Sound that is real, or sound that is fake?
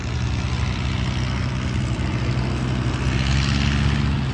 real